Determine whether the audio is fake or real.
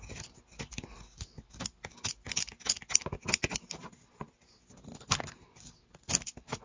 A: real